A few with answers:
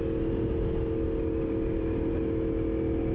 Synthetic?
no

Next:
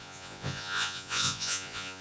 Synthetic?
yes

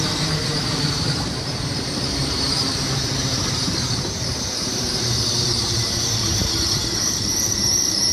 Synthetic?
yes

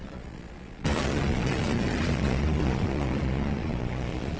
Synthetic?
yes